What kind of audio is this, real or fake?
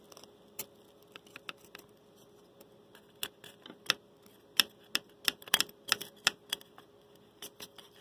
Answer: real